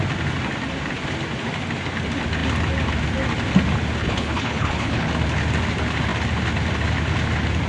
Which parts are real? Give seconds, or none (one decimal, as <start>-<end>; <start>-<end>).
0.0-4.0; 5.1-7.7